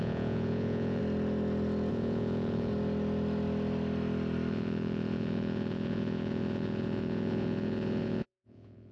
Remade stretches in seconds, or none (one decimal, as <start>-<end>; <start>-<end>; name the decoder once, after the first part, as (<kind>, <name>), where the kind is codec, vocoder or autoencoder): 0.0-1.0 (vocoder, Vocos); 1.9-2.7; 4.5-8.9